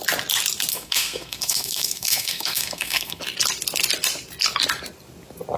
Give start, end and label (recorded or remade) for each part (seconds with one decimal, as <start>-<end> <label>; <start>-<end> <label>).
0.0-0.7 recorded; 0.7-3.2 remade; 3.2-5.6 recorded